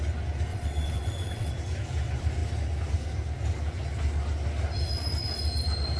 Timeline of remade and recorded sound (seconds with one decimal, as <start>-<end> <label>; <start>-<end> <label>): 0.0-0.5 recorded; 0.5-1.5 remade; 1.5-6.0 recorded